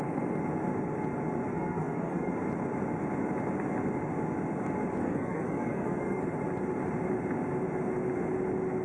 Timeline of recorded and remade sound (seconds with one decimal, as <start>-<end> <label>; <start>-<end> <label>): 0.0-1.5 recorded; 1.5-2.3 remade; 2.3-5.0 recorded; 5.0-6.2 remade; 6.2-8.8 recorded